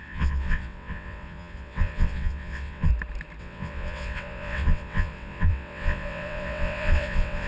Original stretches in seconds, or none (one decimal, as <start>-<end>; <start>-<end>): 2.9-3.4